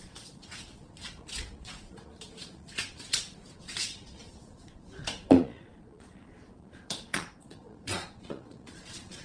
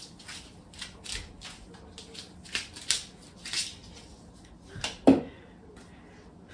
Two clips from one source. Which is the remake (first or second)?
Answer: first